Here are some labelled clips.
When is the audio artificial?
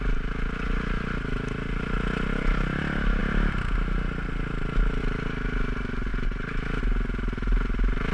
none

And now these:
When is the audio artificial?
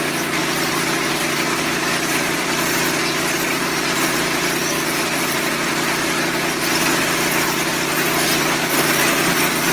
none